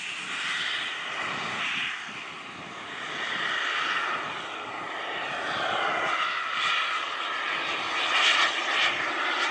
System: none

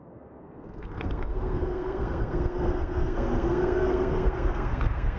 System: codec, SNAC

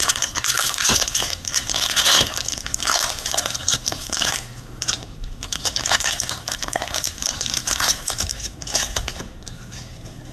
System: codec, SNAC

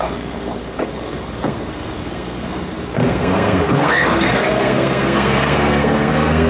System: codec, SNAC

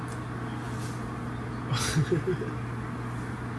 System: none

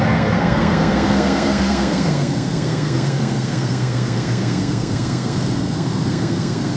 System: codec, SNAC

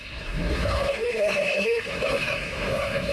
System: codec, SNAC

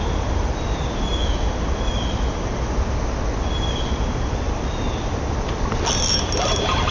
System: none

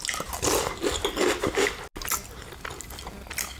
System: none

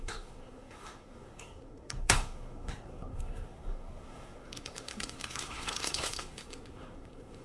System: codec, SNAC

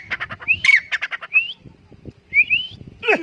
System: none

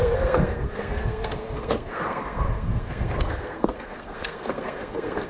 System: codec, SNAC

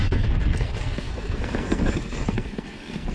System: codec, SNAC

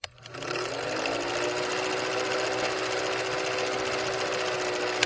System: none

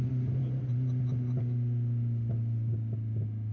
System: none